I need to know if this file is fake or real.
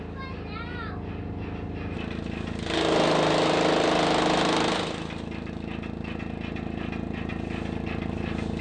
real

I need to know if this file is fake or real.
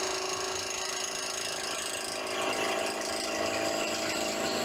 real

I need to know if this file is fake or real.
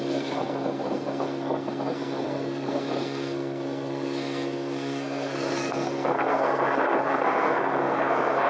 fake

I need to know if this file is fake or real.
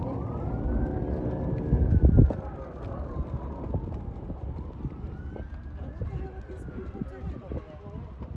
real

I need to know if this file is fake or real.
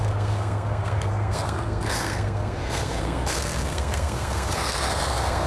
fake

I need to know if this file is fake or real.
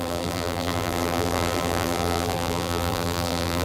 fake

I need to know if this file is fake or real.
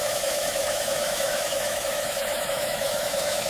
fake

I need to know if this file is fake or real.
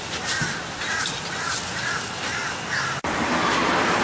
real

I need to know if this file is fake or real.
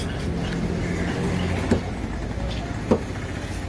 real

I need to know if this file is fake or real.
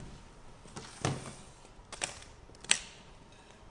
real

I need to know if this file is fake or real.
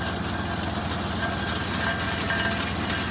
real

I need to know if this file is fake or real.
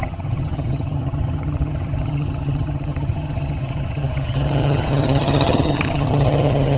fake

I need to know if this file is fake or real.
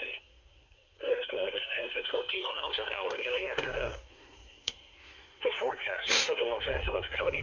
fake